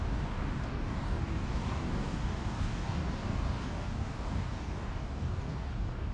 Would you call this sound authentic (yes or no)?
no